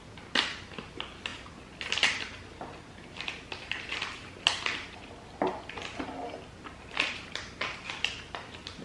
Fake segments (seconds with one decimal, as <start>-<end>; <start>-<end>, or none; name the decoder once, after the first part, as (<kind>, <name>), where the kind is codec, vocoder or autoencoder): none